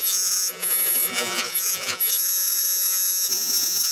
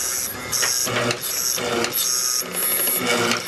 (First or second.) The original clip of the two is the second